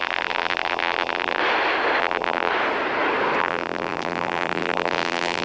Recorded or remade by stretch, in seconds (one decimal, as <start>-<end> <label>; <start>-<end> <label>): 0.0-1.4 remade; 1.4-2.0 recorded; 2.0-2.5 remade; 2.5-3.4 recorded; 3.4-5.4 remade